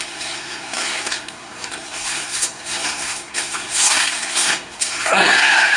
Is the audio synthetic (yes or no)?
yes